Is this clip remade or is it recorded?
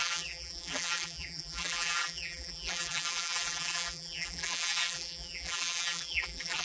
remade